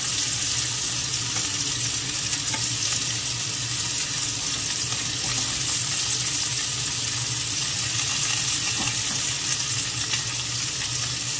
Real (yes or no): yes